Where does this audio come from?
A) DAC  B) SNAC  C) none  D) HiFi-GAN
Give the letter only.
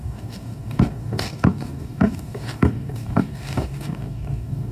A